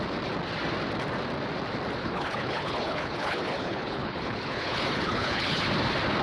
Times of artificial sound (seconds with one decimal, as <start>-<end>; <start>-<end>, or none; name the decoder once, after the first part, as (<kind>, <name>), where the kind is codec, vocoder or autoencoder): 2.0-5.6 (codec, HILCodec)